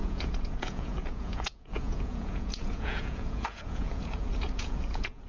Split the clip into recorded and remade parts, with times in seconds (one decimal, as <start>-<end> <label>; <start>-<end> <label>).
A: 0.0-5.3 remade